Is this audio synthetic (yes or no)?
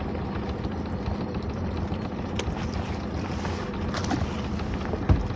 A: no